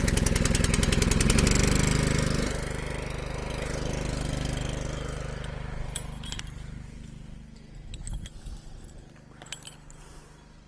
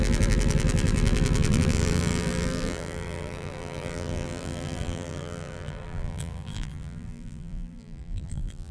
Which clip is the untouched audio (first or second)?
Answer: first